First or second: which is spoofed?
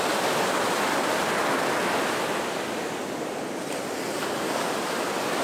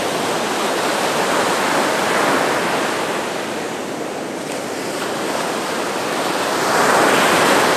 second